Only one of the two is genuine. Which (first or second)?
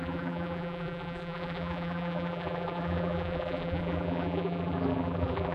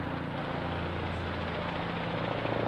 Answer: second